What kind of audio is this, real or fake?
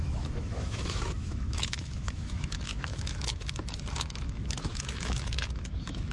fake